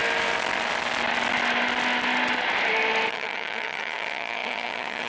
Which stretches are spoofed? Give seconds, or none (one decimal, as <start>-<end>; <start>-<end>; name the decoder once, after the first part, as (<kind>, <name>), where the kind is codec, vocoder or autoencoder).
3.1-5.1 (vocoder, HiFi-GAN)